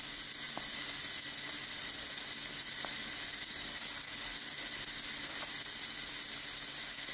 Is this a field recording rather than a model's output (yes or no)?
yes